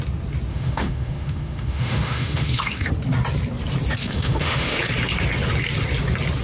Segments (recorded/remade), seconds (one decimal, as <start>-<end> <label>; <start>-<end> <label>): 0.0-0.5 recorded; 0.5-2.9 remade; 2.9-4.0 recorded; 4.0-4.8 remade; 4.8-6.4 recorded